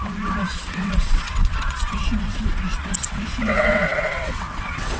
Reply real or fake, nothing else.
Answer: fake